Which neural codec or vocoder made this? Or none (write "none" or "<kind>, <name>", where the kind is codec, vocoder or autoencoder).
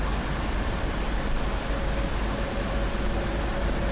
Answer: none